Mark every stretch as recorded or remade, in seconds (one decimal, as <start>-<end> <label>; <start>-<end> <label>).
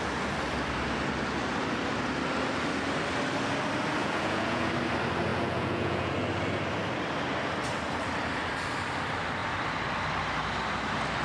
0.0-4.0 recorded; 4.0-4.7 remade; 4.7-5.3 recorded; 5.3-6.1 remade; 6.1-11.2 recorded